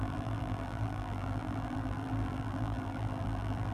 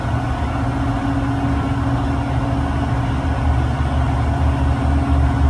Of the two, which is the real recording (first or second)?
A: second